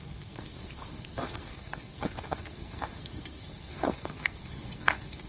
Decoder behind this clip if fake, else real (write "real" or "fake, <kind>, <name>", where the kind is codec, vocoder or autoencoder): fake, codec, SNAC